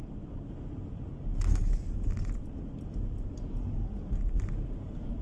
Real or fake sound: real